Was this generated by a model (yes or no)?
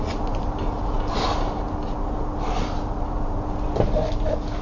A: no